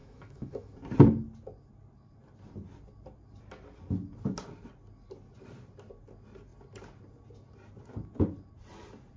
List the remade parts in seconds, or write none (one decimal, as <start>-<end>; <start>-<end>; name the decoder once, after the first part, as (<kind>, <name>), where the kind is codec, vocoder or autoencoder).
0.0-0.7 (autoencoder, DAC-VAE)